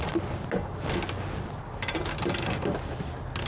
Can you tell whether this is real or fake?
real